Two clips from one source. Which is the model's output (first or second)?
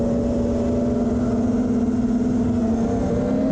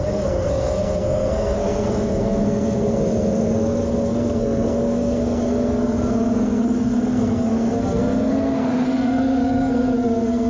second